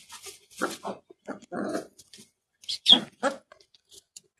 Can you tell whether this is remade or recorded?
remade